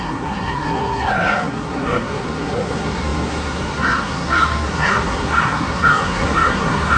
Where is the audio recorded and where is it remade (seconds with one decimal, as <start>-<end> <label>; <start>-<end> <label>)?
0.0-7.0 remade